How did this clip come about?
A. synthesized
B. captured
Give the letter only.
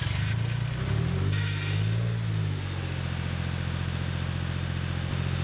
B